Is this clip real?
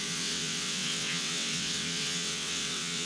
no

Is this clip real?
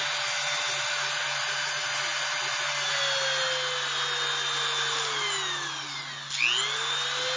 yes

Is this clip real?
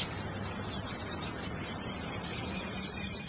yes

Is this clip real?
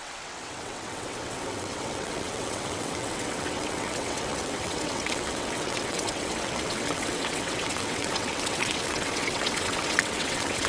no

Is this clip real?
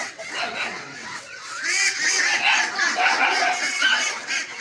no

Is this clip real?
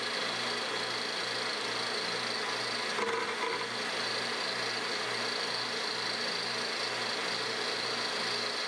yes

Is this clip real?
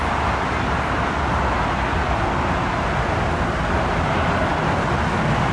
yes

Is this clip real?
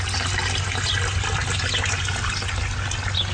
yes